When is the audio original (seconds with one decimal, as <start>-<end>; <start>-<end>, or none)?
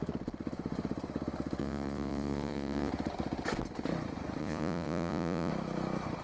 0.0-1.6; 2.9-4.4; 5.5-6.2